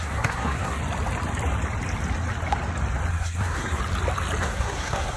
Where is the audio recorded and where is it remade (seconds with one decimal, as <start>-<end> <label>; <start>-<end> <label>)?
0.0-0.8 remade; 0.8-3.1 recorded; 3.1-3.8 remade; 3.8-4.4 recorded; 4.4-5.2 remade